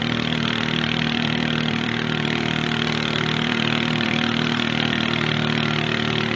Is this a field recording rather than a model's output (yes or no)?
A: no